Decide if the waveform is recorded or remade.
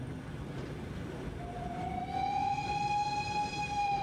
recorded